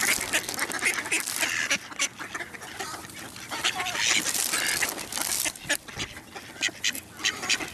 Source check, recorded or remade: recorded